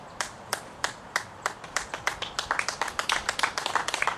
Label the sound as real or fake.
real